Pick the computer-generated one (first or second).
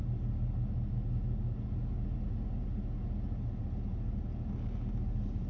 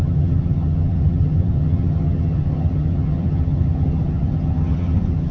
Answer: second